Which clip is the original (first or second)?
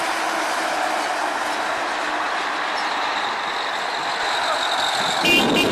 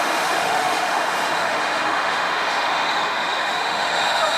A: first